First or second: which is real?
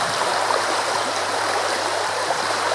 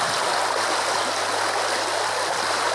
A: second